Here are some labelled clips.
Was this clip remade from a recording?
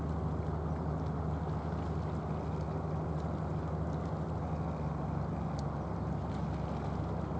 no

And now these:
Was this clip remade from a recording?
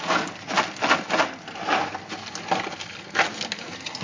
no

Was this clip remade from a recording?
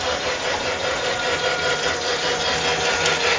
no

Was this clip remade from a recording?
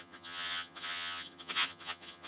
yes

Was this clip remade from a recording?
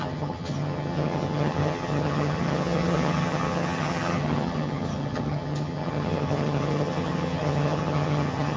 yes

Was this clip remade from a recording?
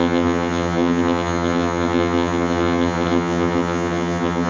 yes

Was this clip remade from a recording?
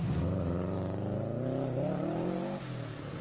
no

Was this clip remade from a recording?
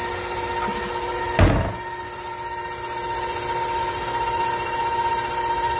no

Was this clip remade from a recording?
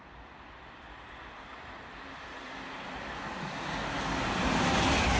no